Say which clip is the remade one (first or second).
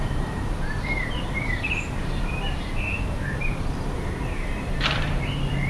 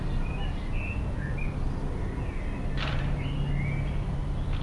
first